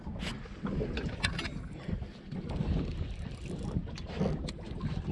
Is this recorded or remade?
recorded